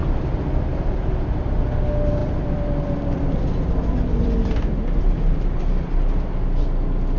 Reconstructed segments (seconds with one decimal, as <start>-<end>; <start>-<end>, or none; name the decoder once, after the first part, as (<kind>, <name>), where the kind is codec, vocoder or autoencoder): 2.2-4.7 (vocoder, BigVGAN v2)